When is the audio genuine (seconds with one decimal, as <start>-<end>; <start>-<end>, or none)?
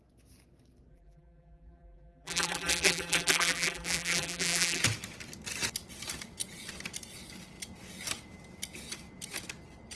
0.0-0.9; 4.8-10.0